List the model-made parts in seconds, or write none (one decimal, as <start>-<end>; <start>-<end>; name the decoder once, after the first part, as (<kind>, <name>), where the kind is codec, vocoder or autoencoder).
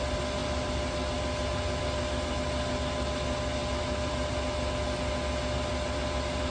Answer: none